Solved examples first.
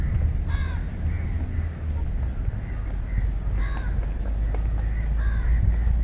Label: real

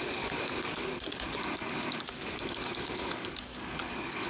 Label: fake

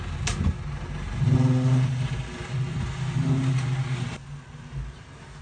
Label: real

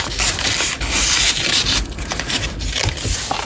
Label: real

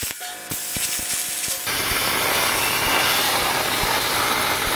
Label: real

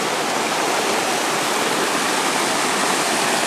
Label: real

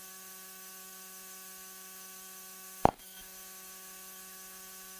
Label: fake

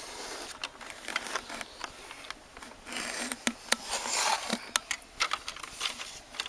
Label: real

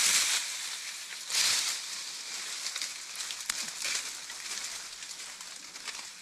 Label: real